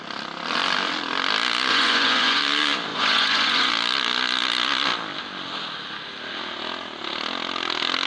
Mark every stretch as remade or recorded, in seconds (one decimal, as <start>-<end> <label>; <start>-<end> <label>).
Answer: 0.0-1.7 recorded; 1.7-2.4 remade; 2.4-2.9 recorded; 2.9-3.7 remade; 3.7-8.1 recorded